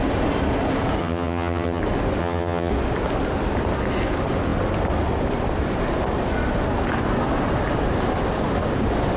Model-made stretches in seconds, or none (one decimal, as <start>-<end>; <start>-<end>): 1.0-1.8; 2.2-2.7